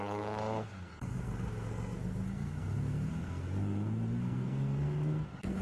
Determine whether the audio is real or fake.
fake